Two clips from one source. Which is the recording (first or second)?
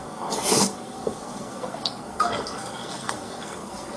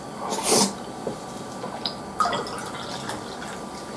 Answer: second